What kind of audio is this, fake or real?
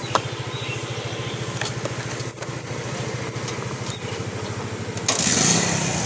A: real